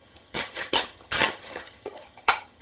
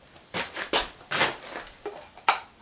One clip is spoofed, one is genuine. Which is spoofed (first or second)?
first